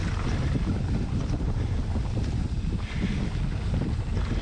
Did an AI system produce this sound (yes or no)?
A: no